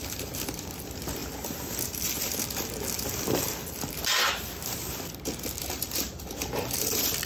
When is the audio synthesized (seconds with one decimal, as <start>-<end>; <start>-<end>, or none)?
0.0-1.2; 5.6-7.3